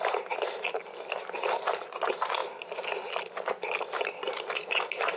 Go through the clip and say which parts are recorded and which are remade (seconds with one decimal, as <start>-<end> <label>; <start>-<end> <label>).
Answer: 0.0-5.2 recorded